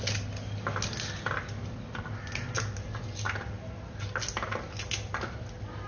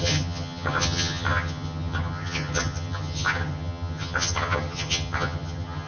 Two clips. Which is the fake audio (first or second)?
second